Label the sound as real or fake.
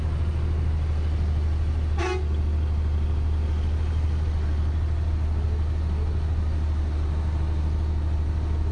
real